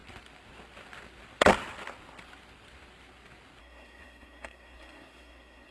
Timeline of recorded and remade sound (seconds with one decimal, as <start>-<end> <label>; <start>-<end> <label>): 0.0-3.6 recorded; 3.6-5.7 remade

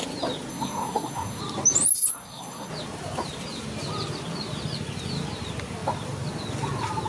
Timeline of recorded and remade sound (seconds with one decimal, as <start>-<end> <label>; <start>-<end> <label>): 0.0-0.5 recorded; 0.5-1.4 remade; 1.4-2.1 recorded; 2.1-2.7 remade; 2.7-7.1 recorded

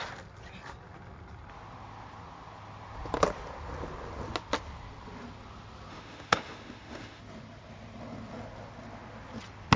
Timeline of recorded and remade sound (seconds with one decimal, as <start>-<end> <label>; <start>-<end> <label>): 0.0-5.9 recorded; 5.9-7.2 remade; 7.2-9.8 recorded

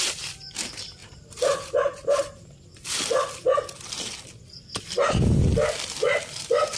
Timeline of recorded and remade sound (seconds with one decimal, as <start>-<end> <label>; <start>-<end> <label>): 0.0-1.0 recorded; 1.0-2.4 remade; 2.4-6.8 recorded